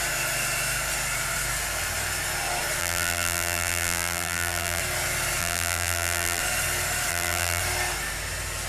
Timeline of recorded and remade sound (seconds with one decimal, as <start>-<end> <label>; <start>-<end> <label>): 0.0-2.8 recorded; 2.8-4.8 remade; 4.8-5.4 recorded; 5.4-6.4 remade; 6.4-7.1 recorded; 7.1-7.6 remade; 7.6-8.7 recorded